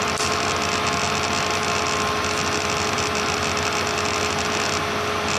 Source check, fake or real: real